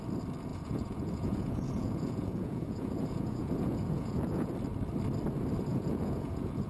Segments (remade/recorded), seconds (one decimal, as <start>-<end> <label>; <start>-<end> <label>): 0.0-0.5 recorded; 0.5-4.5 remade; 4.5-5.7 recorded; 5.7-6.7 remade